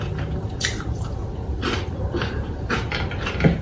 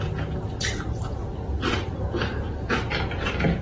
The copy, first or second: first